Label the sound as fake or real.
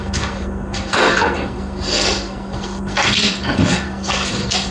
fake